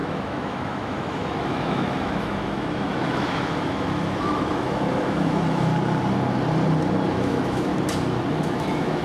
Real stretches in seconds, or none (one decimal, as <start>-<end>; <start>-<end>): 5.7-7.1; 7.7-8.3